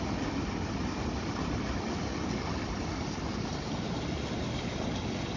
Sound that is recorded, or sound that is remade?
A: recorded